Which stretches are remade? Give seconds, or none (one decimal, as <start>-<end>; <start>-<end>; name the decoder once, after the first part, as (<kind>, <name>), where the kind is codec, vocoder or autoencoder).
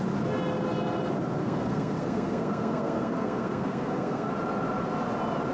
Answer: 1.4-4.3 (codec, SNAC)